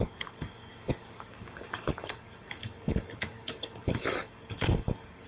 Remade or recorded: remade